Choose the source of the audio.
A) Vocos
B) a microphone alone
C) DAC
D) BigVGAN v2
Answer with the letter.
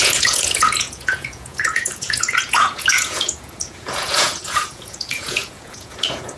A